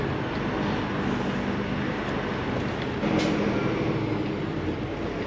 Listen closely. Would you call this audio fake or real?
real